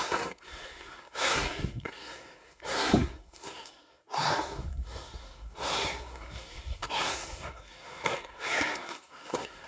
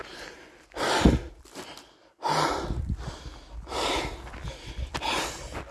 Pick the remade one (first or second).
first